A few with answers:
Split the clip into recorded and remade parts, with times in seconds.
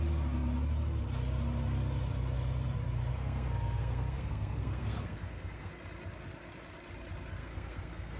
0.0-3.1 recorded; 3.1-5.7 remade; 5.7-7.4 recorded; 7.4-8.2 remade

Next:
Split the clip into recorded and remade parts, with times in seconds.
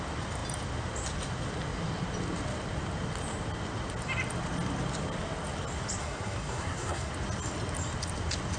0.0-6.0 recorded; 6.0-7.1 remade; 7.1-8.6 recorded